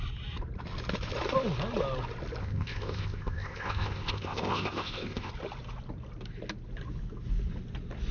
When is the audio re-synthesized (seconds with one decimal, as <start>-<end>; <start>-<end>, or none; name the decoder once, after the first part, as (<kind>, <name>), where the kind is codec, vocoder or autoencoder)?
2.4-5.3 (codec, ZipCodec)